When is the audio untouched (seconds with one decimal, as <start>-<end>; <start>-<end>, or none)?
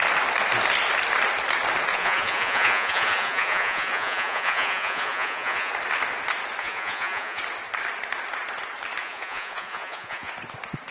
0.0-1.9; 5.7-6.6; 7.4-9.0; 10.3-10.9